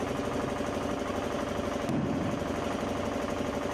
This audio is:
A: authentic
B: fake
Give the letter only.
A